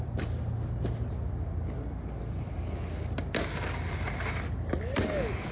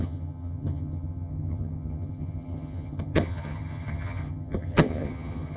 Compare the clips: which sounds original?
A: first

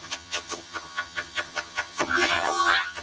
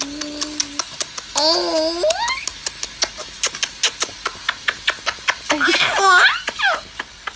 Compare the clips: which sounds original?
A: second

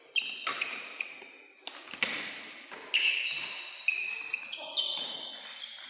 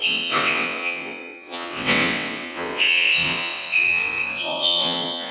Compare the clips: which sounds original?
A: first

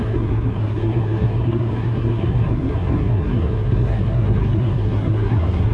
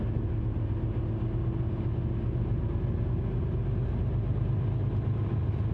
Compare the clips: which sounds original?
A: second